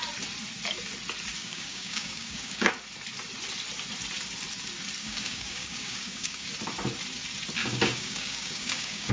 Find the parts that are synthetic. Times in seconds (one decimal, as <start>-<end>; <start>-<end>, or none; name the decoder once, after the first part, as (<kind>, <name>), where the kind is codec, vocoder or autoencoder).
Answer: 1.4-2.7 (codec, DAC); 5.0-6.5; 7.6-9.1